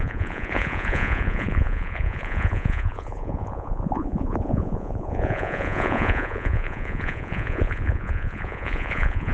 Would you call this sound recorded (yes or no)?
no